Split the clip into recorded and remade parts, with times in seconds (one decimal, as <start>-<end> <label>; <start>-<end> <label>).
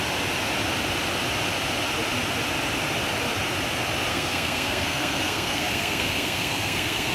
0.0-4.1 recorded; 4.1-7.1 remade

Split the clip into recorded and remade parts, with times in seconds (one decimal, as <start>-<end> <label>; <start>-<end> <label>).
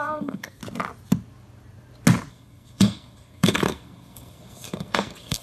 0.0-0.6 remade; 0.6-2.3 recorded; 2.3-5.4 remade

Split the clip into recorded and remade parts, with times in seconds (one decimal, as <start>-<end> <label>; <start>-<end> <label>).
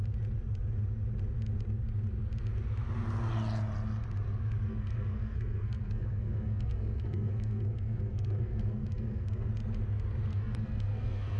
0.0-4.7 recorded; 4.7-9.5 remade; 9.5-10.3 recorded; 10.3-11.4 remade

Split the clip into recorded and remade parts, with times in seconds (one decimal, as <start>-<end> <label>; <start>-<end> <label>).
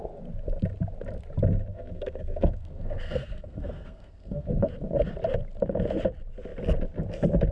0.0-1.7 recorded; 1.7-4.6 remade; 4.6-7.5 recorded